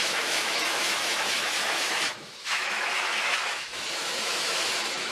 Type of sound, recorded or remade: remade